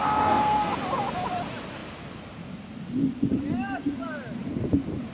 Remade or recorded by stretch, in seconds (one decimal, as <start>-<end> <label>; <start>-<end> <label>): 0.0-0.7 remade; 0.7-5.1 recorded